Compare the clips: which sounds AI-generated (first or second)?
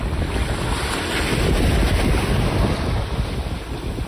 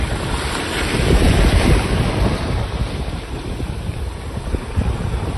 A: second